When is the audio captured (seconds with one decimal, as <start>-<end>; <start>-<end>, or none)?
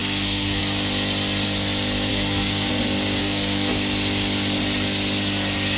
0.6-2.1; 2.7-3.2; 3.7-5.8